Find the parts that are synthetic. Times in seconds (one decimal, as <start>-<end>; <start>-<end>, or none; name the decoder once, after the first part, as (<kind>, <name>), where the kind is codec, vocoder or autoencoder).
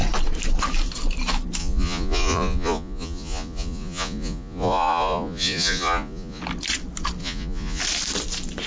1.6-6.4 (vocoder, Vocos); 7.2-7.8